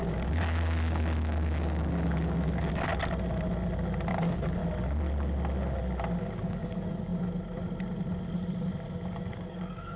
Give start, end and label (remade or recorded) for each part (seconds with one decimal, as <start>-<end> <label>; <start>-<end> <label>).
0.0-2.9 remade; 2.9-4.1 recorded; 4.1-4.6 remade; 4.6-6.2 recorded; 6.2-7.1 remade; 7.1-9.2 recorded; 9.2-10.0 remade